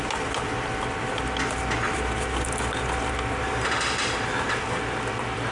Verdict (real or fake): real